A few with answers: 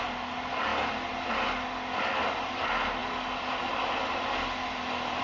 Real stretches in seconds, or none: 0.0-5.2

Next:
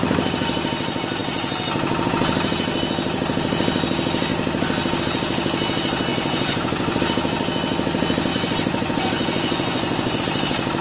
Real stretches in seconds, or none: 0.0-6.1; 7.0-8.3; 10.2-10.8

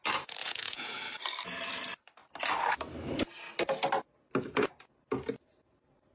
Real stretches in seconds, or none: 0.0-0.4; 1.0-6.1

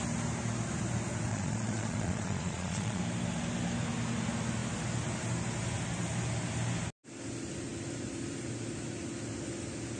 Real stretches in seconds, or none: 0.0-1.3; 3.0-10.0